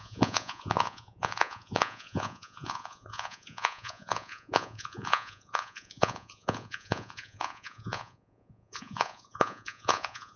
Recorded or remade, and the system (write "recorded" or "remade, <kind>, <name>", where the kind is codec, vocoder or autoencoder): remade, vocoder, Vocos